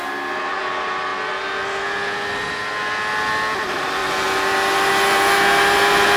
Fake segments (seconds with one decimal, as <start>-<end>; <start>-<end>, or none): 4.0-4.9